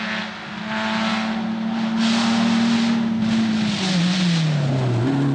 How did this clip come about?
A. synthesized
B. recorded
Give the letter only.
B